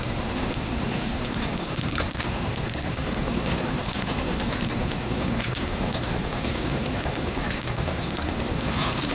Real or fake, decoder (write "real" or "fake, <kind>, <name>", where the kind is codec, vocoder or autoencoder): fake, codec, SNAC